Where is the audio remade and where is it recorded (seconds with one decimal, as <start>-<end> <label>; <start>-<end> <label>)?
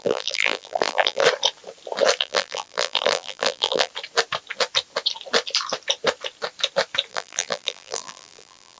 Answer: 0.0-1.2 remade; 1.2-2.2 recorded; 2.2-3.9 remade; 3.9-7.1 recorded; 7.1-8.8 remade